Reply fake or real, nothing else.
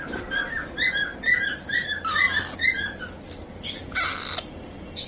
real